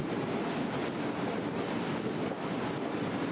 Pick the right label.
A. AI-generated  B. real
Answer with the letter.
B